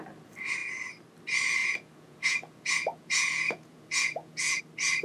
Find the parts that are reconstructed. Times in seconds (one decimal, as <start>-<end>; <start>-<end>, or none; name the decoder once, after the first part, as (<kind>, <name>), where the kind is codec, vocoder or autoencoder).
1.6-4.6 (vocoder, Vocos)